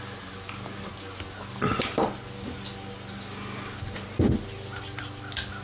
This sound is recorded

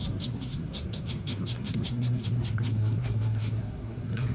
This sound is remade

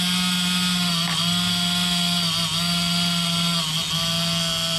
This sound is recorded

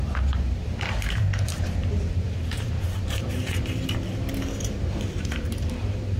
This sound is remade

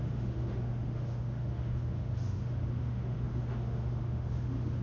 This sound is remade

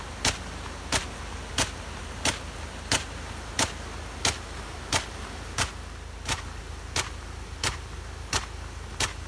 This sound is recorded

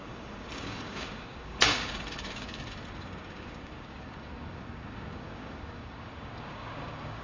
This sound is remade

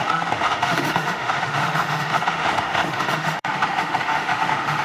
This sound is remade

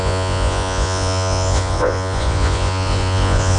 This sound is remade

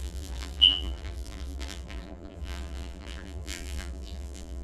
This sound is remade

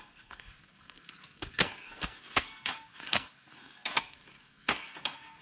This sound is remade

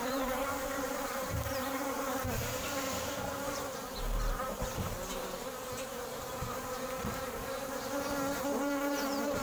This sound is remade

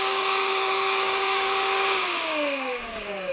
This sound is remade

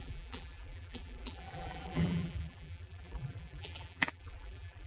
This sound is remade